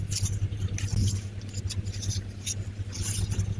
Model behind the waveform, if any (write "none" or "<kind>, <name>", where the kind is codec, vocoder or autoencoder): none